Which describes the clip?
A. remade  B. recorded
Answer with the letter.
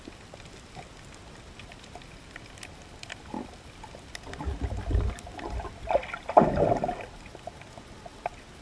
B